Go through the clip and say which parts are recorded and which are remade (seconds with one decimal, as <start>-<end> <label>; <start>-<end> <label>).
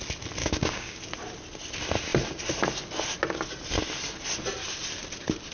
0.0-0.4 recorded; 0.4-1.0 remade; 1.0-5.5 recorded